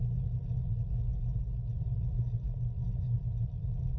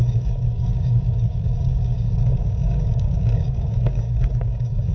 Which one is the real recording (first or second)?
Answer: first